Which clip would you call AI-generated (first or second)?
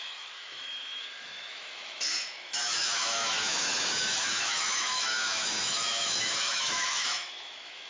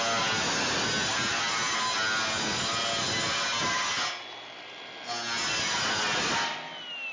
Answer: first